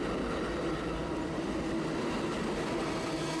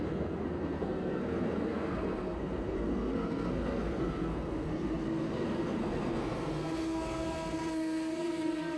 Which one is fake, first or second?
second